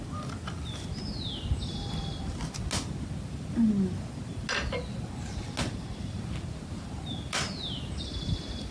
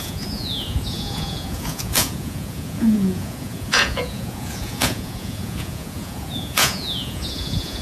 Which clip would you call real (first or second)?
first